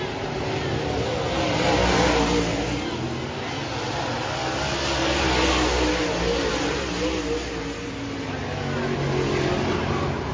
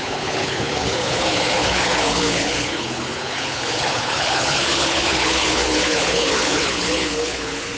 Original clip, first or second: first